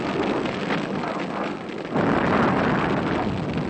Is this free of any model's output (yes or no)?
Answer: yes